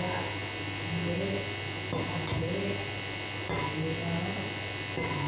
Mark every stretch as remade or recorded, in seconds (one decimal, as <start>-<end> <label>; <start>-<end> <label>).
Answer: 0.0-5.3 recorded